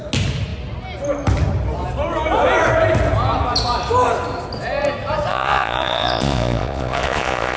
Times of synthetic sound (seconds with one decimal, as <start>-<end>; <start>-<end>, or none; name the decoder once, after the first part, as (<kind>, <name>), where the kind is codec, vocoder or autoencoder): 5.3-7.6 (vocoder, Vocos)